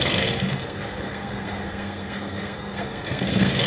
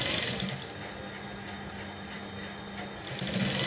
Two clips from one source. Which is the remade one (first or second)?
first